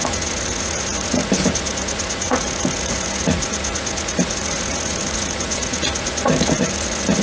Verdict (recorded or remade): remade